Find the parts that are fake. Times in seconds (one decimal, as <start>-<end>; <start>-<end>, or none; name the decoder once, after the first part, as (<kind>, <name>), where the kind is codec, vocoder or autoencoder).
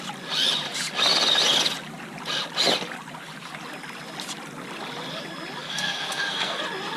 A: 5.6-6.6 (codec, SNAC)